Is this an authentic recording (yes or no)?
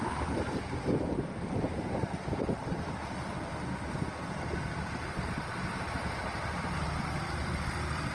no